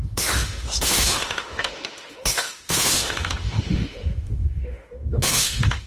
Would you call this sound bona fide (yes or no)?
no